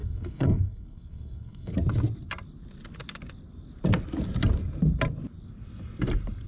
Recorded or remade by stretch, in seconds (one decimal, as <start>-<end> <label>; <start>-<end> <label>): 0.0-1.7 remade; 1.7-6.5 recorded